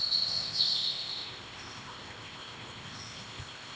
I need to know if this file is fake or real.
fake